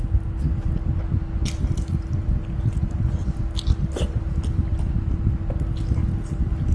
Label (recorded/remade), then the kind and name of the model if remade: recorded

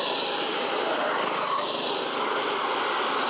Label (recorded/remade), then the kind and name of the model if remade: recorded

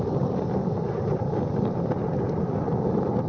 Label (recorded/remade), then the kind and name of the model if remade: recorded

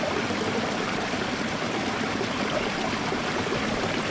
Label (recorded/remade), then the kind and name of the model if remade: recorded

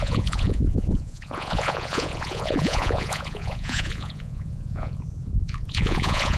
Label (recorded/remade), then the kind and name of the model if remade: remade, vocoder, Vocos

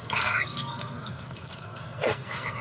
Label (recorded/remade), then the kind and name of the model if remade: remade, codec, SNAC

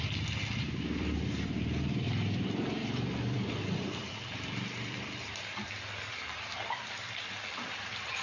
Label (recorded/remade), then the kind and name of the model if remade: remade, vocoder, BigVGAN v2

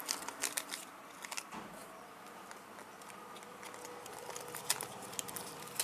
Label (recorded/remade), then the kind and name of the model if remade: recorded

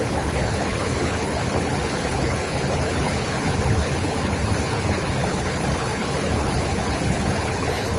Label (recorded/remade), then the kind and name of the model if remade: remade, codec, HILCodec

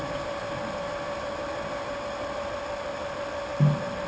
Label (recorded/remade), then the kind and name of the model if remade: recorded